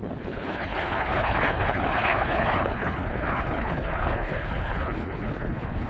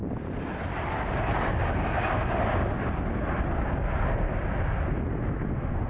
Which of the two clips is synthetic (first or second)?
first